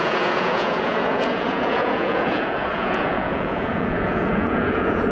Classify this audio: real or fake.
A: fake